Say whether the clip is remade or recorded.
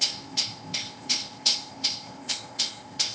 remade